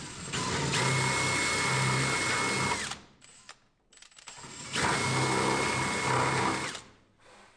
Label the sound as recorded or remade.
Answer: recorded